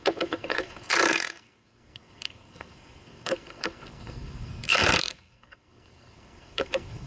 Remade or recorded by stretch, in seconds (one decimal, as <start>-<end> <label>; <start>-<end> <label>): 0.0-7.1 remade